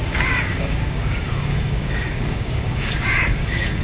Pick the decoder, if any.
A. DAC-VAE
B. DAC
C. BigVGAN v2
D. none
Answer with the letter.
B